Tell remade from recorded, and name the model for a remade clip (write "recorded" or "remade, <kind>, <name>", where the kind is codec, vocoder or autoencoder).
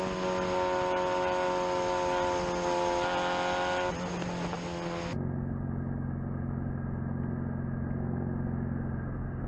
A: recorded